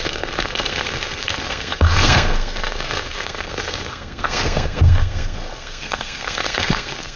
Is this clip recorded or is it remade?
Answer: remade